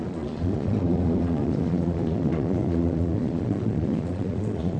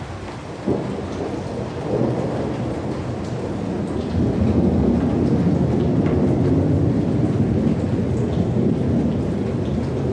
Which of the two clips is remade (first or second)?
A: first